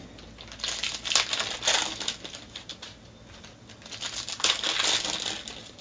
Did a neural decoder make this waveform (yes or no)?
no